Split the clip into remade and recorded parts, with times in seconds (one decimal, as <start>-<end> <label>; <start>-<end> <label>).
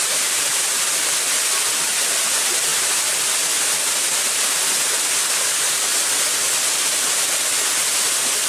0.0-8.5 recorded